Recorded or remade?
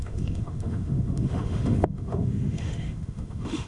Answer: remade